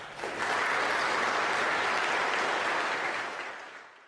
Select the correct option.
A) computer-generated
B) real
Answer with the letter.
B